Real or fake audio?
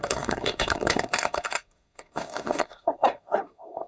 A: fake